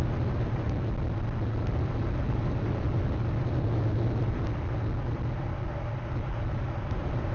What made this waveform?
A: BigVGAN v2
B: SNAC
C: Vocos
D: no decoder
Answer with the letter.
D